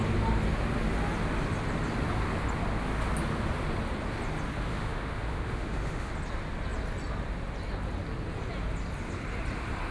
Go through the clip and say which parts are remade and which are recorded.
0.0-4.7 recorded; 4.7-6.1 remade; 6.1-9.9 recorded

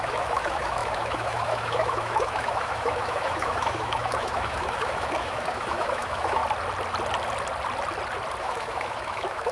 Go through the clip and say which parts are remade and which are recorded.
0.0-6.4 remade; 6.4-8.4 recorded; 8.4-9.5 remade